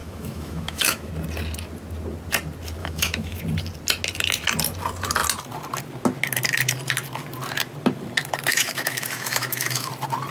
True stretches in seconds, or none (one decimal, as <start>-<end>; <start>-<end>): 1.1-2.8; 3.4-8.5; 9.9-10.3